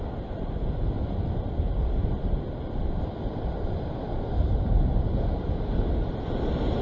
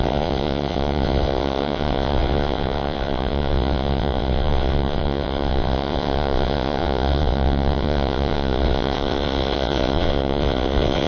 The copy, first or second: second